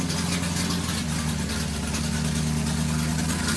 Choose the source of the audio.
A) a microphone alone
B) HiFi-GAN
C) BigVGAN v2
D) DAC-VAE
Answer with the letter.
A